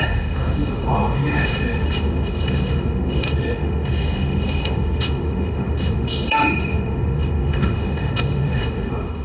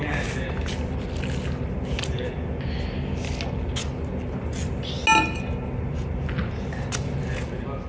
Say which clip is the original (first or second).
second